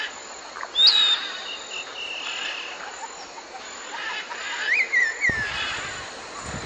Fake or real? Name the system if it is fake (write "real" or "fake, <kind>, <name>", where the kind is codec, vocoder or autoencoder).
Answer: real